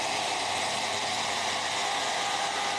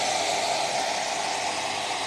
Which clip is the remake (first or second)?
first